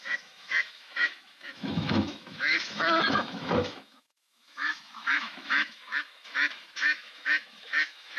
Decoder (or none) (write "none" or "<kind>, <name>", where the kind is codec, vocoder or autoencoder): autoencoder, DAC-VAE